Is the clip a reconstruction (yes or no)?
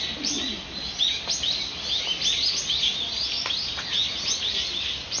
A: no